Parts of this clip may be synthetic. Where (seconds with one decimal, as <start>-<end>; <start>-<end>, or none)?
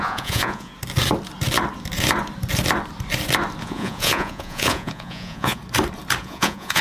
0.0-0.7; 3.6-5.6; 6.2-6.8